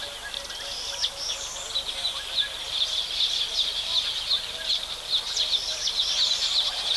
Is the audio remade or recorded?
remade